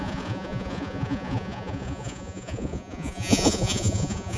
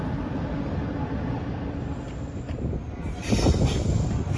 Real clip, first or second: second